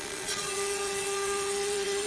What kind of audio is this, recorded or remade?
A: remade